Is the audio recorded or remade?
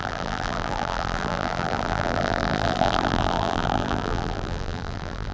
remade